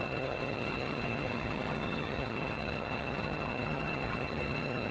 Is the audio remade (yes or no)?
yes